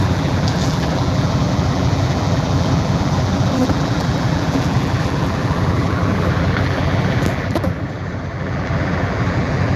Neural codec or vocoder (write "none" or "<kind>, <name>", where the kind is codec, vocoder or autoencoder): vocoder, BigVGAN v2